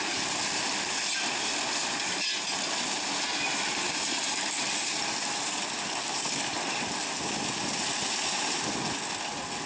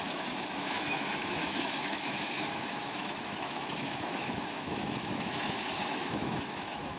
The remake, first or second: second